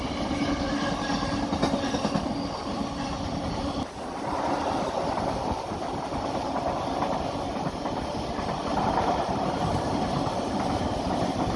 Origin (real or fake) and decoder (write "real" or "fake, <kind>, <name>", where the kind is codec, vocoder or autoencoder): real